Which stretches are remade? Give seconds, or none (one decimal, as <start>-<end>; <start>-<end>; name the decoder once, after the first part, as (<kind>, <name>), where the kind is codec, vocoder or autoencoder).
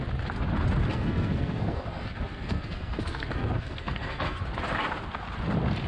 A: 0.9-4.4 (codec, SNAC)